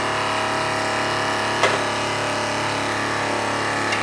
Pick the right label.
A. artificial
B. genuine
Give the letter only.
B